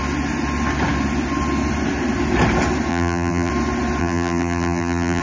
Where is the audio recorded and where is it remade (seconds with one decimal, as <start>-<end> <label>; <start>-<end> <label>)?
0.0-2.9 recorded; 2.9-3.5 remade; 3.5-4.0 recorded; 4.0-5.2 remade